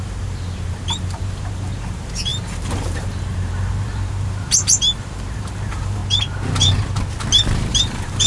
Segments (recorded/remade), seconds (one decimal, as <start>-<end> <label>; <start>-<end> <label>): 0.0-6.0 remade; 6.0-7.7 recorded; 7.7-8.3 remade